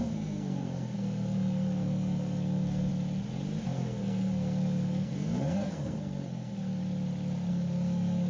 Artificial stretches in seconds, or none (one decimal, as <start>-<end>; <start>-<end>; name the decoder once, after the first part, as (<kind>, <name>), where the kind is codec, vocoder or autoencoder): 0.0-2.9 (codec, SNAC); 3.6-6.8; 7.5-8.3